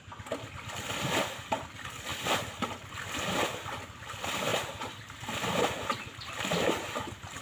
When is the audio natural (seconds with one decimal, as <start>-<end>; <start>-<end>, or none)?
0.0-7.4